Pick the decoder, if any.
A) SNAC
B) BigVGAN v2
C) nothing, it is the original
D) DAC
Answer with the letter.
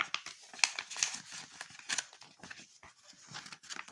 C